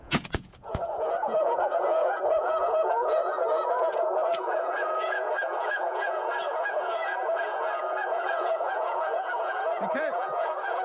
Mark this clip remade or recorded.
remade